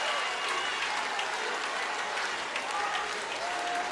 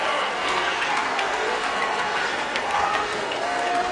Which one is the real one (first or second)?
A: first